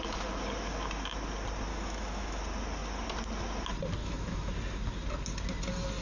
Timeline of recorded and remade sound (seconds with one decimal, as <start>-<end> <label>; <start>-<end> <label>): 0.0-1.7 recorded; 1.7-2.4 remade; 2.4-4.0 recorded; 4.0-4.5 remade; 4.5-6.0 recorded